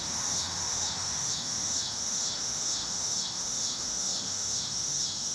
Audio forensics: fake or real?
fake